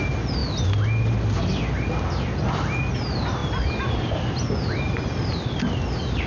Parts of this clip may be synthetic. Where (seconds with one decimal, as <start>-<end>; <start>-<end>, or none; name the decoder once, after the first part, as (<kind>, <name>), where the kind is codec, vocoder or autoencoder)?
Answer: none